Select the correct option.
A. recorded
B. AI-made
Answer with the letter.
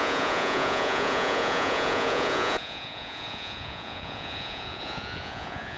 B